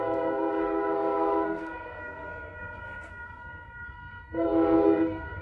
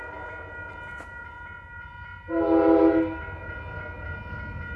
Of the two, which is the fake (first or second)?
first